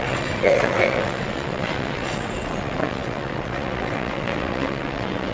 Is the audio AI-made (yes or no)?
yes